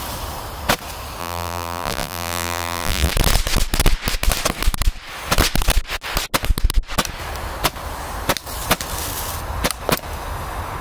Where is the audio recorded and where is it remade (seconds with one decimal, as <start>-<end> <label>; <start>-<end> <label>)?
0.0-1.2 recorded; 1.2-3.1 remade; 3.1-10.8 recorded